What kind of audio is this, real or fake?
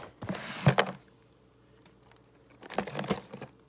real